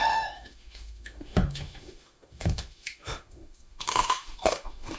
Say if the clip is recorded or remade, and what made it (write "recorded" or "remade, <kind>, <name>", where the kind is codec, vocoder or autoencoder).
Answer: remade, autoencoder, DAC-VAE